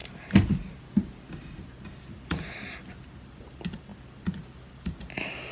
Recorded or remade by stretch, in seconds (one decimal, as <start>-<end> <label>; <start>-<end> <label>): 0.0-5.5 recorded